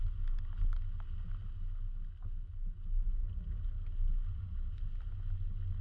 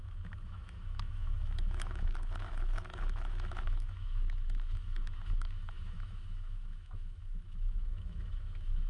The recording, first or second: first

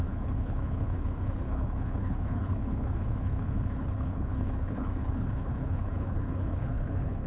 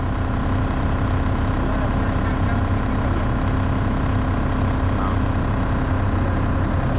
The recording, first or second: second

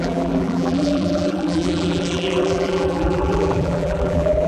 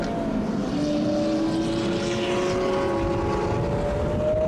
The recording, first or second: second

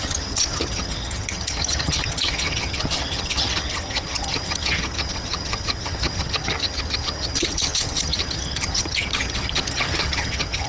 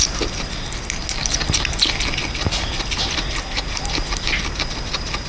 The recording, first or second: second